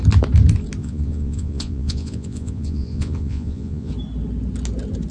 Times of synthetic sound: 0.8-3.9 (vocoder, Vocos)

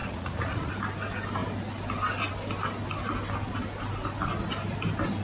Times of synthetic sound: 0.0-0.7 (vocoder, Vocos)

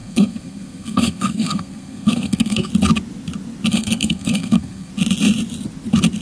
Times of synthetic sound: 0.0-2.7 (codec, SNAC); 3.7-4.9

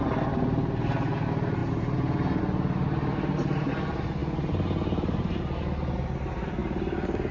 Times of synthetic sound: none

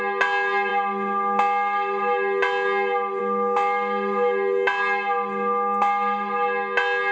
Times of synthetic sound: none